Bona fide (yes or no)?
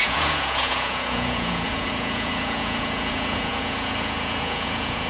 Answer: no